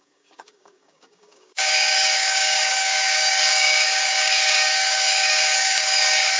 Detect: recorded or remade remade